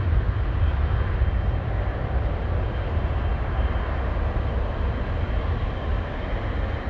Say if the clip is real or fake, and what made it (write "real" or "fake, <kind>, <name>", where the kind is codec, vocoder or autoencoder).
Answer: real